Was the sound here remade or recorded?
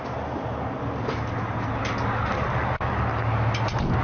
recorded